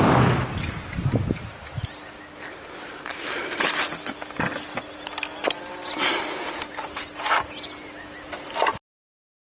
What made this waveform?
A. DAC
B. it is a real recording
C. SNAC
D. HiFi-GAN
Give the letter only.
B